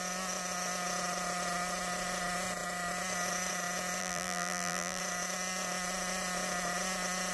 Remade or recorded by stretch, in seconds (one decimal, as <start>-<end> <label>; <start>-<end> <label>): 0.0-4.0 recorded; 4.0-5.0 remade; 5.0-7.3 recorded